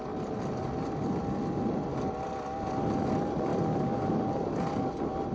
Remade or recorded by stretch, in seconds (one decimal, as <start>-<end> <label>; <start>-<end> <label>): 0.0-5.3 recorded